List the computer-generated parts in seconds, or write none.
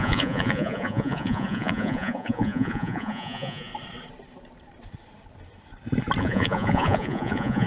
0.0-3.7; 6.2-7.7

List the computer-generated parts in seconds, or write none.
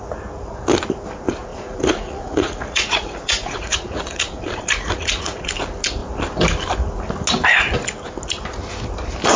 1.5-5.5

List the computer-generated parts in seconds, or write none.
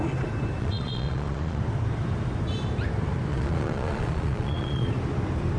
0.6-1.6; 3.3-4.9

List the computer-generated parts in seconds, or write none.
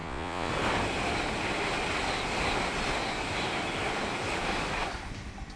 0.0-0.5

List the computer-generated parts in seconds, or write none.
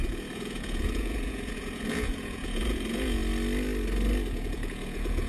0.0-3.2; 4.3-5.3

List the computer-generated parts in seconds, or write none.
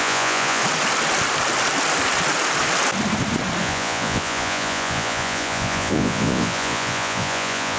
0.0-0.6; 3.6-7.8